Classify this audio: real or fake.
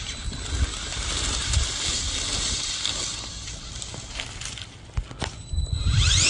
real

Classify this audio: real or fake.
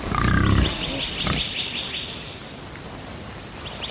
real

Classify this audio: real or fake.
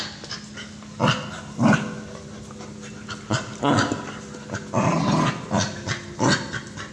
real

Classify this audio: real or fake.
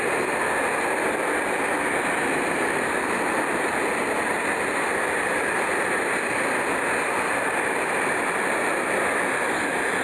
real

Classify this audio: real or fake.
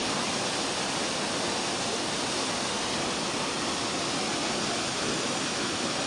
real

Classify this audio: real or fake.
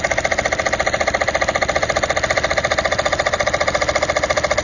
real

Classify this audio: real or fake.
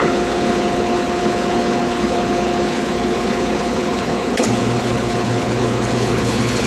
fake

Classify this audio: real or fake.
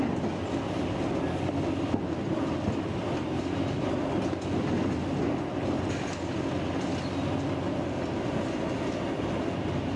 real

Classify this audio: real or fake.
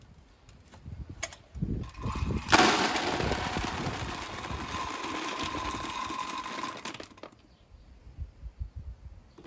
real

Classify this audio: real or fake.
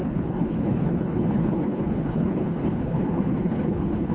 fake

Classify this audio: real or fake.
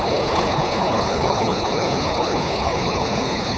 fake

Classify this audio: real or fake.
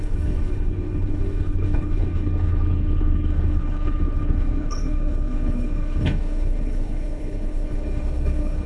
fake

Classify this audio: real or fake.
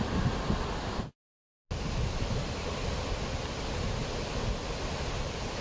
real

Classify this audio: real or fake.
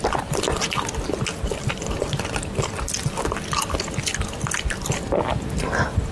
real